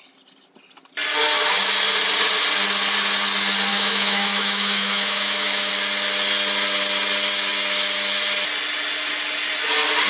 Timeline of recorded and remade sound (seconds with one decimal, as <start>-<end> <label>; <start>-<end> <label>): 0.0-3.7 recorded; 3.7-5.7 remade; 5.7-10.1 recorded

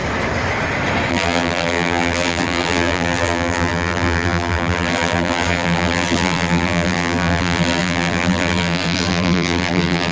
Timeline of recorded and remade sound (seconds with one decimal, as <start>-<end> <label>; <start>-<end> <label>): 0.0-1.1 recorded; 1.1-10.1 remade